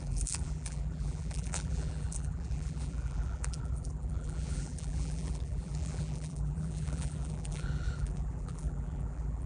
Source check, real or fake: fake